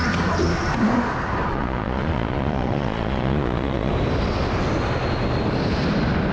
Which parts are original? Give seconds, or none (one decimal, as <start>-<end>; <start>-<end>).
0.0-1.5; 3.9-6.3

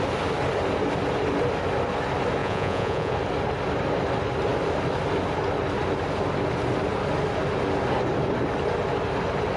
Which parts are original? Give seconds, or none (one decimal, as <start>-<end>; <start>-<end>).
0.0-2.4; 3.1-9.6

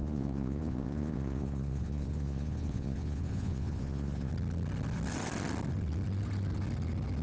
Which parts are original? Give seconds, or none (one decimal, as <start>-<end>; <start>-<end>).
4.3-7.2